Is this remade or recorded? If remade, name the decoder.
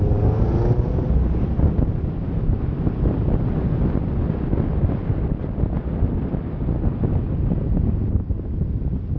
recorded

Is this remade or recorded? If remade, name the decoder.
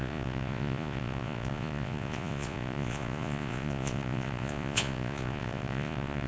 remade, vocoder, Vocos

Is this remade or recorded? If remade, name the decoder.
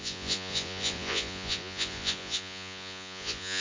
remade, vocoder, Vocos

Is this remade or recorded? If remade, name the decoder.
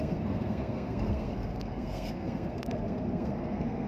remade, codec, SNAC